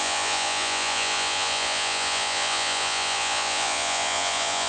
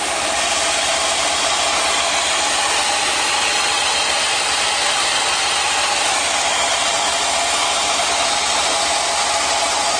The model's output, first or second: first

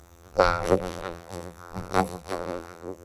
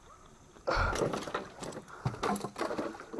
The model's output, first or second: first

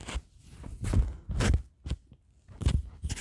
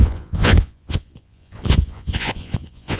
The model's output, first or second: second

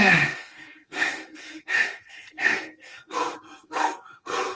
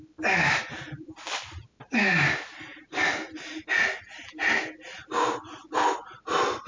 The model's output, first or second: first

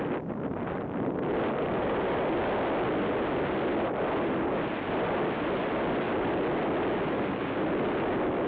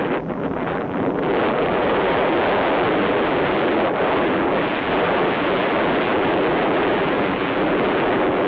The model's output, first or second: second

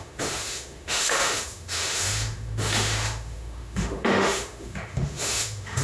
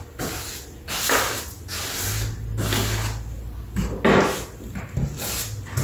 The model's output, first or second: first